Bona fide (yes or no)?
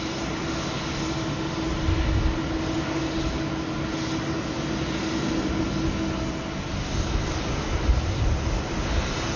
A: yes